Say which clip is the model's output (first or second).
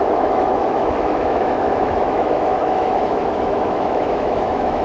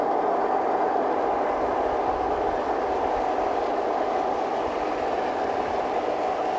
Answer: first